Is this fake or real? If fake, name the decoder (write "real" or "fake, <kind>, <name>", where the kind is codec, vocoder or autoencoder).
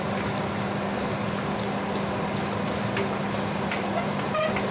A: real